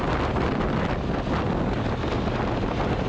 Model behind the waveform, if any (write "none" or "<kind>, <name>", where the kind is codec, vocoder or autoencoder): none